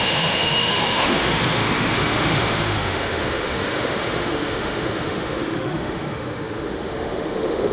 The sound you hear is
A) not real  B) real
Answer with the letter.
A